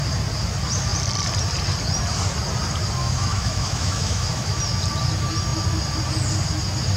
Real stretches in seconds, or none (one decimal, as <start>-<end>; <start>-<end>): 0.0-3.0; 4.6-7.0